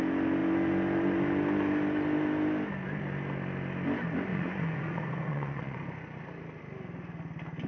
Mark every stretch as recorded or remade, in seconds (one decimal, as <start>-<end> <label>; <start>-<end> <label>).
0.0-4.3 recorded; 4.3-5.8 remade; 5.8-7.7 recorded

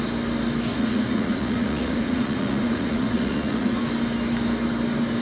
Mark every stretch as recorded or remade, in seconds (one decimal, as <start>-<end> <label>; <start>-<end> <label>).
0.0-0.7 recorded; 0.7-3.8 remade; 3.8-5.2 recorded

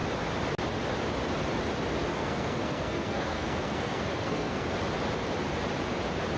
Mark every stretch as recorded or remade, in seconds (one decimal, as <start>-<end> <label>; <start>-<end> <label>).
0.0-2.1 recorded; 2.1-4.7 remade; 4.7-6.4 recorded

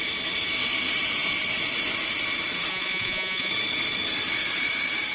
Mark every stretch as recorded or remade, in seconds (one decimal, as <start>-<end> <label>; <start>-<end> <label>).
0.0-2.7 recorded; 2.7-3.5 remade; 3.5-5.1 recorded

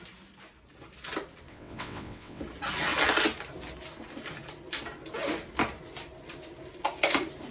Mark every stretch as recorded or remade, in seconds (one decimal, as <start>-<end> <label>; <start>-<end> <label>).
0.0-1.5 recorded; 1.5-2.4 remade; 2.4-7.5 recorded

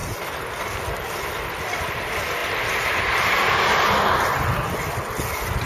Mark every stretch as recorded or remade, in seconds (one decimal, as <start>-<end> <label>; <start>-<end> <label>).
0.0-5.7 recorded